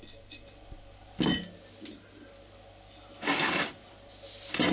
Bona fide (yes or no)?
yes